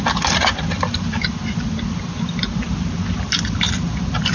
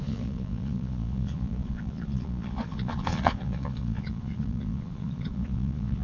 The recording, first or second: first